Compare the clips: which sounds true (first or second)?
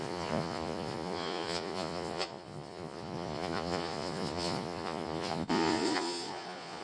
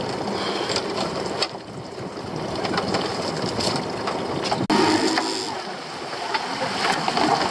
second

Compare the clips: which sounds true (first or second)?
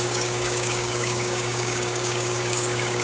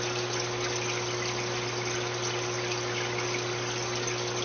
second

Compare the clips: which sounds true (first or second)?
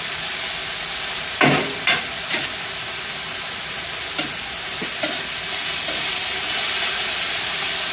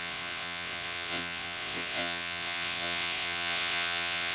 first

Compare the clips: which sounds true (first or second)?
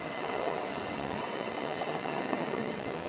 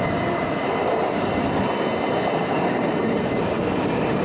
second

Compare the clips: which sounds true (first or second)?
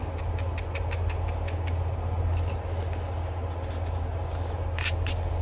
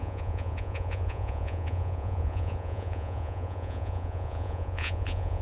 first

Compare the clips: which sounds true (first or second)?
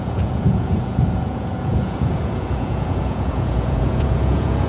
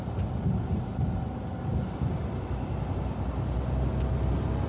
second